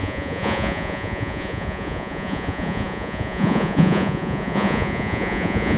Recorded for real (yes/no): no